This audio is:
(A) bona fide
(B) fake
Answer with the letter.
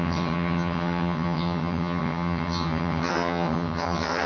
B